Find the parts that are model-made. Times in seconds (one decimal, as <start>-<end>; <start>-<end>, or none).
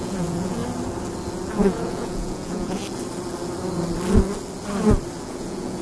0.0-0.6; 1.5-2.8; 5.3-5.8